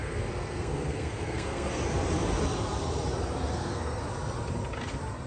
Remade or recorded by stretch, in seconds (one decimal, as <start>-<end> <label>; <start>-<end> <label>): 0.0-1.8 remade; 1.8-3.5 recorded; 3.5-4.0 remade; 4.0-5.3 recorded